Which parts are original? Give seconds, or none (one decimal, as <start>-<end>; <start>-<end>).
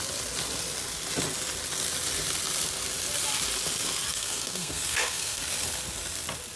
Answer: 0.0-4.1; 5.4-6.6